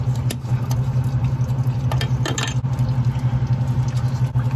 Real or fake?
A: real